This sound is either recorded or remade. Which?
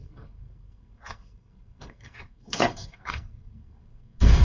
remade